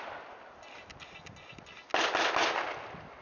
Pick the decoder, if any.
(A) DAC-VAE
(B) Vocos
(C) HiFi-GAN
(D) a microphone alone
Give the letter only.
D